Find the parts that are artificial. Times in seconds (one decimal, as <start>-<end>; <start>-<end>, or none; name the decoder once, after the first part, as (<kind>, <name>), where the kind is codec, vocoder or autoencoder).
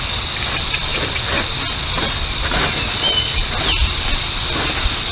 none